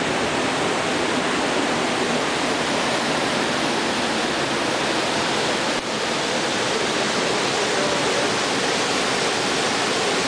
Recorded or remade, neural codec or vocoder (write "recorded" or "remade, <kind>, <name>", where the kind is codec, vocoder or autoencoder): recorded